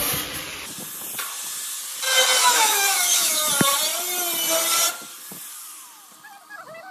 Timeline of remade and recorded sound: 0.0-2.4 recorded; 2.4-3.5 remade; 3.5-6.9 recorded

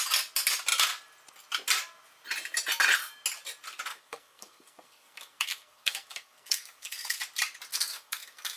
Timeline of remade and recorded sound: 0.0-3.9 recorded; 3.9-7.2 remade; 7.2-7.7 recorded; 7.7-8.6 remade

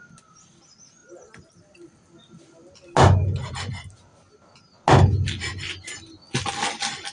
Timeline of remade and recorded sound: 0.0-7.1 recorded